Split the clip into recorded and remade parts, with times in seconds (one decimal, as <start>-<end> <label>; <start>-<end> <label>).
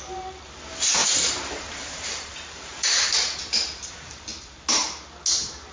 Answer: 0.0-1.0 recorded; 1.0-4.4 remade; 4.4-5.7 recorded